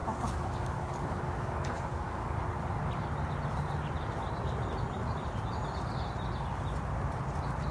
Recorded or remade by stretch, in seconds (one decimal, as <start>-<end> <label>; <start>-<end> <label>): 0.0-2.4 remade; 2.4-7.7 recorded